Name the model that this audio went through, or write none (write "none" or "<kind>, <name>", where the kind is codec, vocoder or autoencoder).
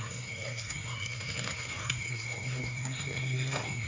codec, SNAC